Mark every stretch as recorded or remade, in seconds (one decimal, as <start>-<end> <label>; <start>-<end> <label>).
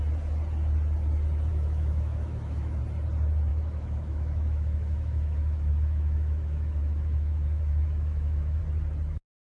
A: 0.0-1.5 recorded; 1.5-2.8 remade; 2.8-3.5 recorded; 3.5-8.6 remade; 8.6-9.6 recorded